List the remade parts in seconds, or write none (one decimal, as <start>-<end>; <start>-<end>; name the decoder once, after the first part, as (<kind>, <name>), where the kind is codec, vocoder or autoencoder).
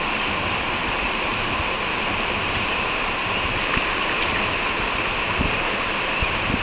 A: 0.8-4.2 (vocoder, BigVGAN v2)